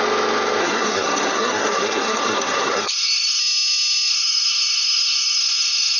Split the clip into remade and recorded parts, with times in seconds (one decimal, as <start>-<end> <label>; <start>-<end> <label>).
0.0-0.6 recorded; 0.6-3.4 remade; 3.4-4.1 recorded; 4.1-6.0 remade

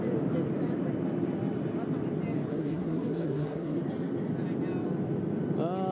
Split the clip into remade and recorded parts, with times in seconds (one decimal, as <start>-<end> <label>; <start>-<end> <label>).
0.0-2.5 recorded; 2.5-3.8 remade; 3.8-5.9 recorded